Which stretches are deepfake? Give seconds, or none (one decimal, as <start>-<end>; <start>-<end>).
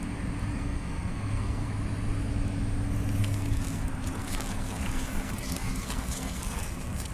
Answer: 0.5-1.7; 3.2-3.8; 4.2-7.1